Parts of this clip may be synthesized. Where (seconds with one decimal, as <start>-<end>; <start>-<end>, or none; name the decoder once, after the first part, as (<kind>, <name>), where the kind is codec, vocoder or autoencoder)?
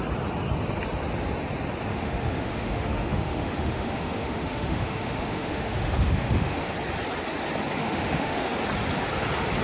1.9-6.7 (autoencoder, DAC-VAE); 7.8-8.5